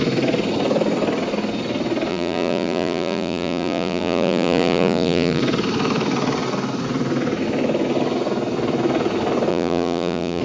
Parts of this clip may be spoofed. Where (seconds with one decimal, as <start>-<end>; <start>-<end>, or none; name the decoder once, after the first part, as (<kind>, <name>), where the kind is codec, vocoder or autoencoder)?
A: 2.1-5.4 (vocoder, BigVGAN v2); 9.5-10.4